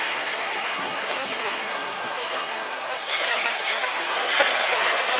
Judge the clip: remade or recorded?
remade